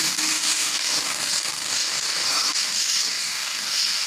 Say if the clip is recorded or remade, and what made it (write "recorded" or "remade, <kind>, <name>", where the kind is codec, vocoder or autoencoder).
remade, codec, DAC